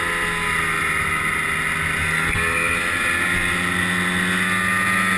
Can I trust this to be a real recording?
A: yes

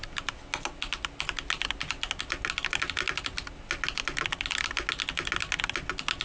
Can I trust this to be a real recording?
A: yes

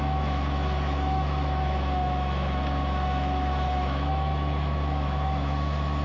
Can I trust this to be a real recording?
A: no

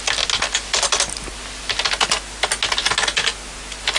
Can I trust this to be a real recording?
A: yes